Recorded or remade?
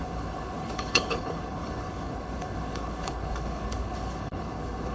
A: remade